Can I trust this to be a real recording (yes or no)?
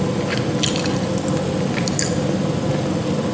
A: yes